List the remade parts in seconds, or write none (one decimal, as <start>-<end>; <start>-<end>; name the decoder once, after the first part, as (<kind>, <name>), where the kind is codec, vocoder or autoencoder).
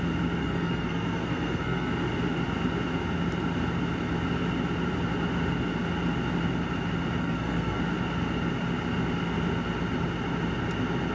0.4-1.9 (codec, SNAC); 7.2-7.8